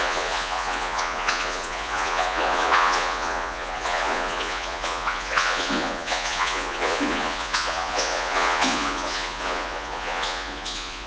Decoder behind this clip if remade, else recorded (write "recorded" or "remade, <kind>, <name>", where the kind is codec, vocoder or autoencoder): remade, vocoder, Vocos